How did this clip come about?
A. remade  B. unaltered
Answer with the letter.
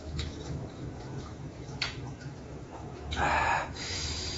A